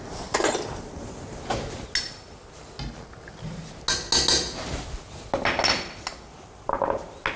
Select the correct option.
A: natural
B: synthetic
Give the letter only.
A